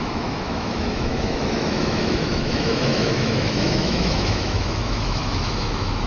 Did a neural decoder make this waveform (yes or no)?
yes